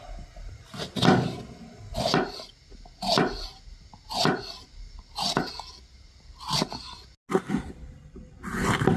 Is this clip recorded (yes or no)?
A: yes